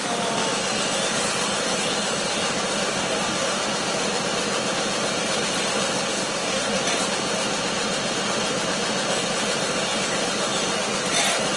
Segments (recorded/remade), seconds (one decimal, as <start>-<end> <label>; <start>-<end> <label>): 0.0-2.9 recorded; 2.9-3.6 remade; 3.6-6.1 recorded; 6.1-6.8 remade; 6.8-11.6 recorded

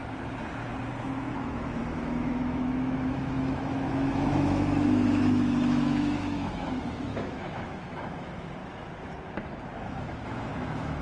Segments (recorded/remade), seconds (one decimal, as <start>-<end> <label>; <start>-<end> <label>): 0.0-1.0 recorded; 1.0-8.6 remade; 8.6-9.7 recorded; 9.7-11.0 remade

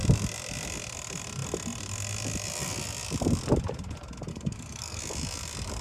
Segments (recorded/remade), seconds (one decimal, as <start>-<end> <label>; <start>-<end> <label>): 0.0-4.3 recorded; 4.3-5.0 remade; 5.0-5.8 recorded

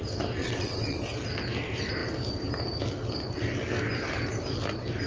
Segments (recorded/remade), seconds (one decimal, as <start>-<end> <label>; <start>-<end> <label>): 0.0-0.4 recorded; 0.4-1.0 remade; 1.0-5.1 recorded

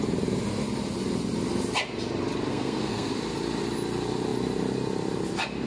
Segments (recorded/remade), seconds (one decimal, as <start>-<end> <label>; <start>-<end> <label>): 0.0-2.5 recorded; 2.5-3.1 remade; 3.1-5.7 recorded

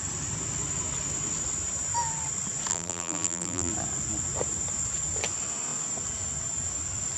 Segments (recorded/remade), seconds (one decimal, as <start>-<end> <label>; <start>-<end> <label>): 0.0-2.7 recorded; 2.7-3.7 remade; 3.7-7.2 recorded